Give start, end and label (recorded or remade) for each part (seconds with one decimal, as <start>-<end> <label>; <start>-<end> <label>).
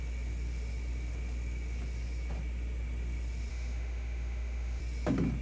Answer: 0.0-3.5 recorded; 3.5-4.8 remade; 4.8-5.4 recorded